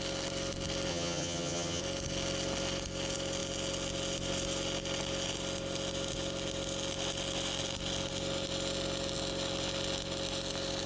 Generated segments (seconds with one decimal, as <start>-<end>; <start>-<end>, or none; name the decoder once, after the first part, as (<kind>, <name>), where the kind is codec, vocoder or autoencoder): 0.9-1.8 (vocoder, HiFi-GAN)